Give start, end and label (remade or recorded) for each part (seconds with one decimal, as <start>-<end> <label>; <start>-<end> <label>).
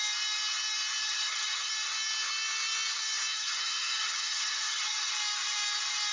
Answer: 0.0-1.0 recorded; 1.0-1.7 remade; 1.7-3.3 recorded; 3.3-5.1 remade; 5.1-6.1 recorded